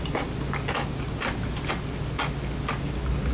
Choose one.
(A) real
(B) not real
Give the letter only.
A